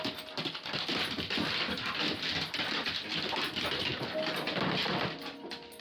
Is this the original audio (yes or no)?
yes